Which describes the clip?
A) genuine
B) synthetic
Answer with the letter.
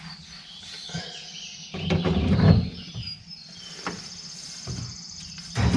A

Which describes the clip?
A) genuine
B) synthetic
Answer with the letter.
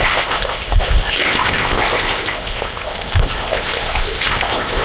B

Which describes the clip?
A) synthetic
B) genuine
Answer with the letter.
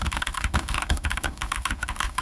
A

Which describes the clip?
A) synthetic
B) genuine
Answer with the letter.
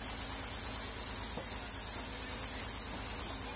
B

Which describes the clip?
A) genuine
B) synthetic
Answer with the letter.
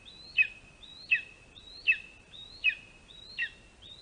A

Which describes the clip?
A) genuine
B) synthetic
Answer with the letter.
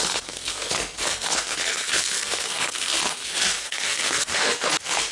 B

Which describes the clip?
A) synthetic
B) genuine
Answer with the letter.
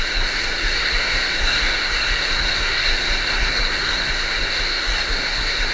A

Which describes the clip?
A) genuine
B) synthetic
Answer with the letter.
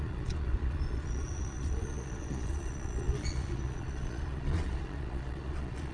B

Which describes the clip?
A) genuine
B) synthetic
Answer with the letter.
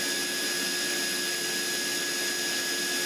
A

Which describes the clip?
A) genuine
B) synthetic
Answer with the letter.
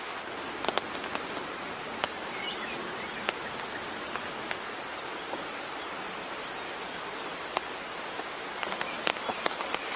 A